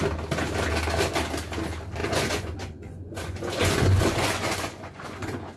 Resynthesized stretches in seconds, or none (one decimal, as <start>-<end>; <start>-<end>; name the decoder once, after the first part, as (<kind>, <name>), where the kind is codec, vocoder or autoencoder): 2.0-5.6 (vocoder, Vocos)